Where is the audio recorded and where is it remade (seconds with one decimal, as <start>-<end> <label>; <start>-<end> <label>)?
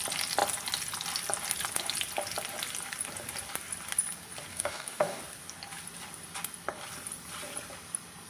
0.0-4.5 recorded; 4.5-5.2 remade; 5.2-8.3 recorded